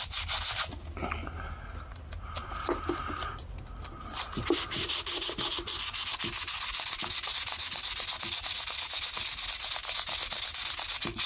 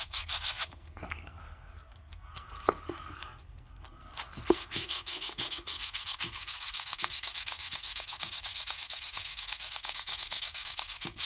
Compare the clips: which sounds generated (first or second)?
second